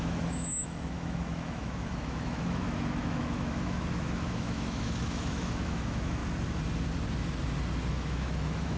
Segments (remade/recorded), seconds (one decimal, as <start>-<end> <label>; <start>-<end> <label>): 0.0-6.2 remade; 6.2-7.9 recorded; 7.9-8.8 remade